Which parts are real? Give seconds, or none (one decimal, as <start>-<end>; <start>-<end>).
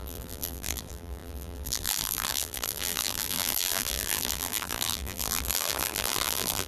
none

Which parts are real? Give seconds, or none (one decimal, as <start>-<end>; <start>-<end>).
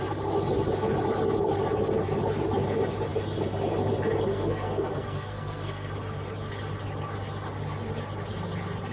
0.0-4.3; 5.9-8.9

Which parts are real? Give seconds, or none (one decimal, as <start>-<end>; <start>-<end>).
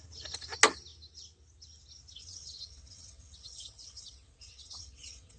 0.0-2.2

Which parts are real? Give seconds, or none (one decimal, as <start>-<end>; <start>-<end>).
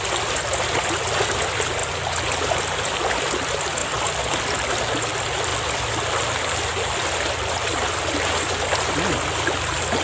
0.0-10.0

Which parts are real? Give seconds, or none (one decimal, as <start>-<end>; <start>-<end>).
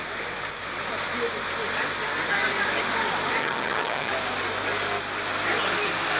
0.0-3.4; 4.1-6.2